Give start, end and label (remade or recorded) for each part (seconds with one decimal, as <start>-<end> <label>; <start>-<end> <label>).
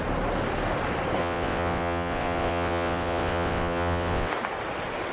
0.0-1.2 recorded; 1.2-4.3 remade; 4.3-5.1 recorded